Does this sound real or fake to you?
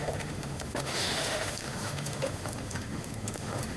fake